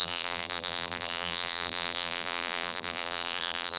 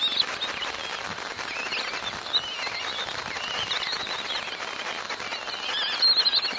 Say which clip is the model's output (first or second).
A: first